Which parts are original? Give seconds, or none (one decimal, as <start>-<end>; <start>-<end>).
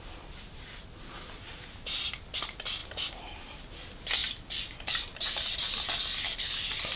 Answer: 0.0-2.8; 3.6-7.0